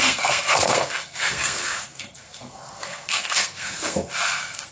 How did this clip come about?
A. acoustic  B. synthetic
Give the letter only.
B